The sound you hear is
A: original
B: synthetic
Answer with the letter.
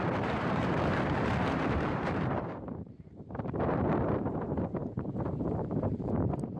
B